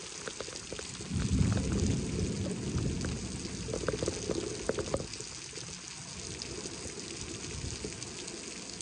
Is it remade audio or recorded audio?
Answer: recorded